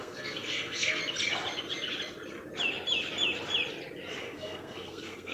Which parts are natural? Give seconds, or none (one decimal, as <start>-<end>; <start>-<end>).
1.0-4.2